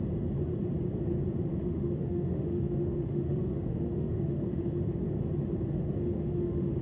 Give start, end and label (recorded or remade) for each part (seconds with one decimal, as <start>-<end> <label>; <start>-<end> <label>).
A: 0.0-1.5 recorded; 1.5-5.0 remade; 5.0-6.0 recorded; 6.0-6.8 remade